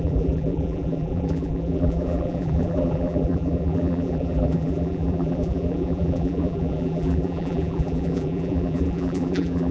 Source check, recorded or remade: remade